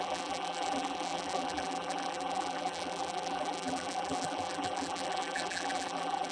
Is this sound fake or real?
fake